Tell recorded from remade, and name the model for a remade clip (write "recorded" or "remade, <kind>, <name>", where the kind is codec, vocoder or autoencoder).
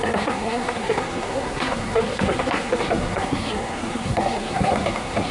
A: remade, codec, SNAC